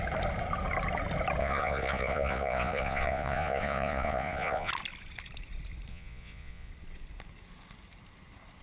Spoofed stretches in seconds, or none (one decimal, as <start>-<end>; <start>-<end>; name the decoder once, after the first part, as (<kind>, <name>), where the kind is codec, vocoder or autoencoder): 1.4-4.7 (vocoder, Vocos); 5.9-6.7